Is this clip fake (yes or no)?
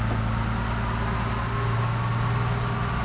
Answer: no